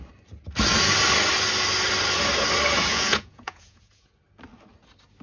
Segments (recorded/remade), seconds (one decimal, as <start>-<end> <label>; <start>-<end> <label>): 0.0-2.9 recorded; 2.9-4.1 remade; 4.1-5.2 recorded